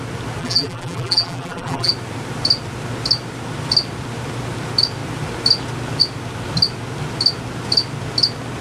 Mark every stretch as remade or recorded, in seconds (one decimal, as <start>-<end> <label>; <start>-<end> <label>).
0.0-0.4 recorded; 0.4-1.9 remade; 1.9-8.6 recorded